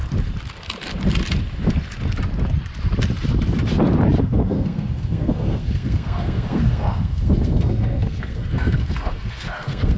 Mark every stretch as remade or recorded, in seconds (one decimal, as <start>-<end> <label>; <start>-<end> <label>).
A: 0.0-4.2 recorded; 4.2-10.0 remade